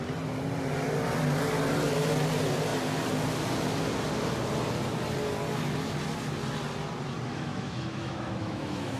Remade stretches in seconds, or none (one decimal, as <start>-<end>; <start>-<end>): 7.3-9.0